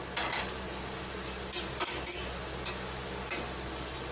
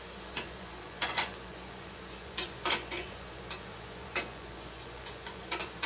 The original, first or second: first